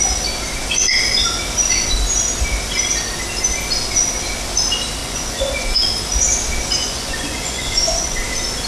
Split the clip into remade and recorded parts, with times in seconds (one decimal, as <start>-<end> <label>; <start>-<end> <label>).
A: 0.0-5.0 recorded; 5.0-5.8 remade; 5.8-6.8 recorded; 6.8-8.2 remade; 8.2-8.7 recorded